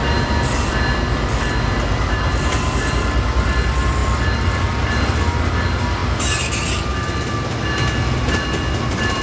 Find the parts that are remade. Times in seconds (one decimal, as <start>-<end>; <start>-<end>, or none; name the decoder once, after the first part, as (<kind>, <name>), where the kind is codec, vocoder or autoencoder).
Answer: none